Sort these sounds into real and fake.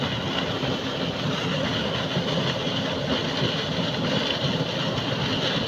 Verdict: real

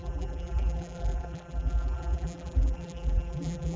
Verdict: fake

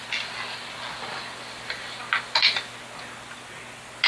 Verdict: real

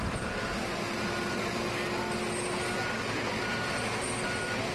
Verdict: real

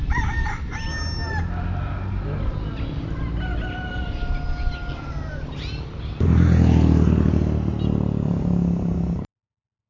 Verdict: real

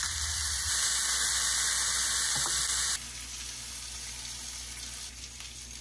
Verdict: real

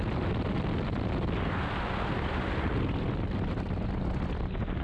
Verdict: real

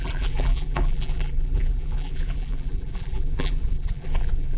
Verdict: fake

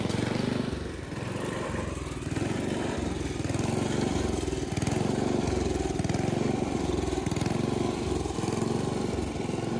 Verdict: real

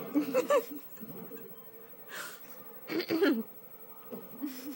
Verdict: real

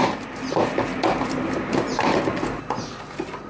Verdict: real